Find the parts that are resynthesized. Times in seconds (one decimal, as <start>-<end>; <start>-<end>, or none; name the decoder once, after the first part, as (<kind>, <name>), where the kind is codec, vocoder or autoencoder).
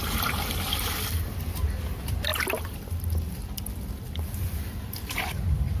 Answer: 0.0-5.8 (vocoder, BigVGAN v2)